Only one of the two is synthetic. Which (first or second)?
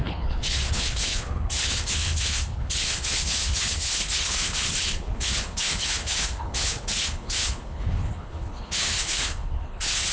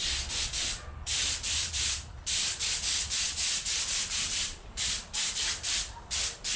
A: first